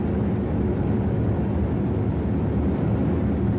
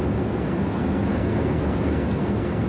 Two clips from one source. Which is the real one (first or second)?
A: first